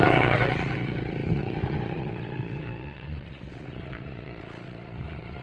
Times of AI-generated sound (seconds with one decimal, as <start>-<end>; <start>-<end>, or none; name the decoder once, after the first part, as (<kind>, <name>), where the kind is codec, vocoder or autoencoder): 0.0-5.4 (vocoder, Vocos)